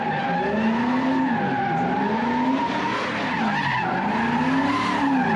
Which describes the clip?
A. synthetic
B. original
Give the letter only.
B